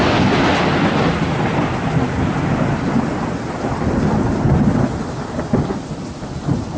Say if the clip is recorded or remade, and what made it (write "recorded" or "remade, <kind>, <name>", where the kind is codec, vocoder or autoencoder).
recorded